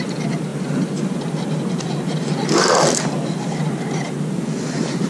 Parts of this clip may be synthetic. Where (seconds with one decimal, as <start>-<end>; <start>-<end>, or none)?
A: none